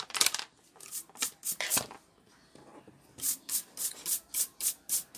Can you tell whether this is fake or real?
real